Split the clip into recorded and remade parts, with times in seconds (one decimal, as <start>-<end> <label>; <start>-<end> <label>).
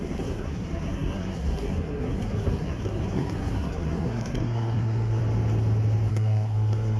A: 0.0-5.2 remade; 5.2-6.1 recorded; 6.1-7.0 remade